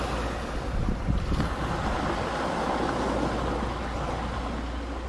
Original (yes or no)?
yes